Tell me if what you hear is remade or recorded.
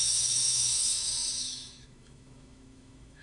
remade